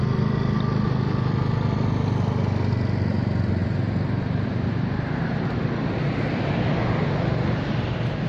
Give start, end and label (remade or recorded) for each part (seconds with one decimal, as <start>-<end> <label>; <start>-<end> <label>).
0.0-3.6 recorded; 3.6-6.2 remade; 6.2-8.3 recorded